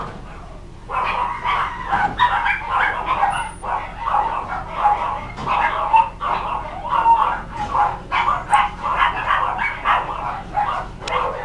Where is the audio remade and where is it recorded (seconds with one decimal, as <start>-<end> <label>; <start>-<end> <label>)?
0.0-0.8 recorded; 0.8-1.4 remade; 1.4-11.4 recorded